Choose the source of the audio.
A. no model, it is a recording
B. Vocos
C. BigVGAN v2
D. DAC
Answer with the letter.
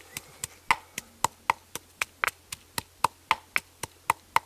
A